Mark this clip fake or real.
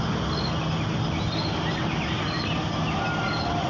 real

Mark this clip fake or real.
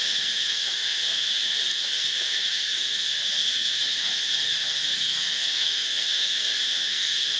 fake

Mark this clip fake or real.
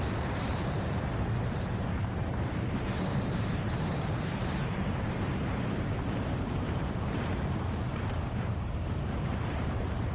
fake